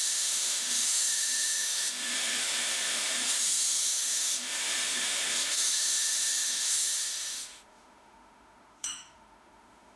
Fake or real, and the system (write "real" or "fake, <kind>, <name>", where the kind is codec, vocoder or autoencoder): fake, autoencoder, DAC-VAE